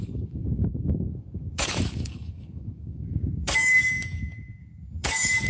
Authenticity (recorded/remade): remade